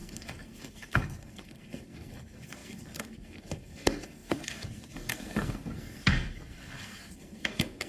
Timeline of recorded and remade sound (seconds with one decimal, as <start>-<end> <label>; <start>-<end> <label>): 0.0-7.9 remade